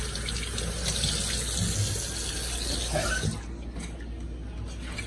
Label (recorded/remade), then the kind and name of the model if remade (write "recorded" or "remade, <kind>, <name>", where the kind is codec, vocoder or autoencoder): recorded